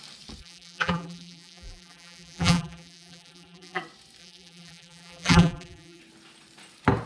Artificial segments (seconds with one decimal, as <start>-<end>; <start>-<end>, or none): 0.4-3.8; 4.2-6.0